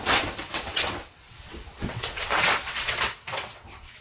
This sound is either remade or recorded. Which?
remade